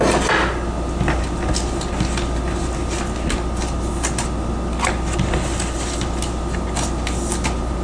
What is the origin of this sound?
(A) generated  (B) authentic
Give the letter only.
B